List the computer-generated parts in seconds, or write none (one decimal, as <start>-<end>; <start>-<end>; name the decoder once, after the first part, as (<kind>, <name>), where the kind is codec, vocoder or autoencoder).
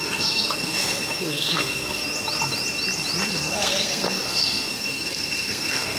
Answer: 0.0-2.0 (codec, SNAC); 3.3-6.0